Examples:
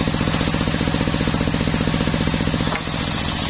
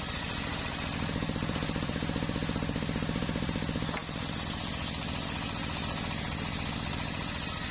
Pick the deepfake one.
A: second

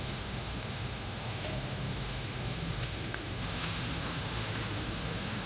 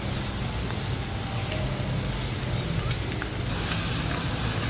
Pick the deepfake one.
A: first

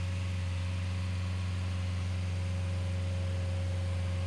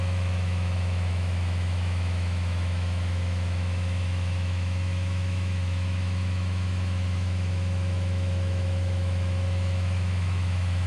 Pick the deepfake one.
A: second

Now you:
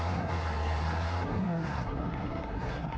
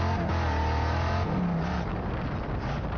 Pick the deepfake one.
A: first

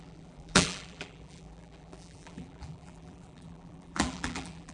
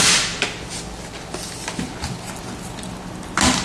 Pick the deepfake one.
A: first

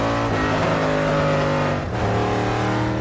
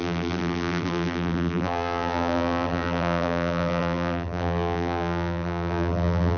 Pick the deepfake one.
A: second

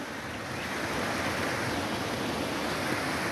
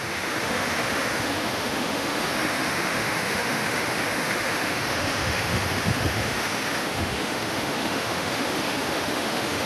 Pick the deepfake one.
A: second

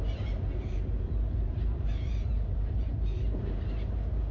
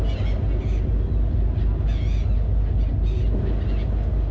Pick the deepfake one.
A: first